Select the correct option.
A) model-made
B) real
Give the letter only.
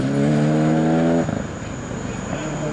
B